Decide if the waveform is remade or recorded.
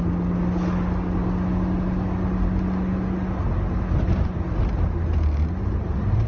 recorded